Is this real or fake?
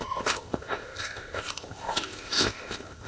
fake